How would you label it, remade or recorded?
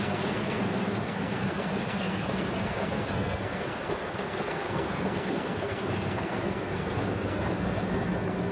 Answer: remade